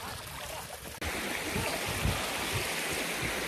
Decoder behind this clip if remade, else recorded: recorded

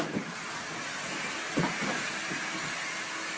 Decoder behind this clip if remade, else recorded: recorded